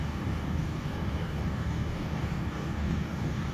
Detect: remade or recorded remade